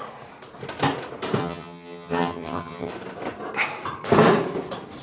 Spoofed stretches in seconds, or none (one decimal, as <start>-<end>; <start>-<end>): 1.4-2.9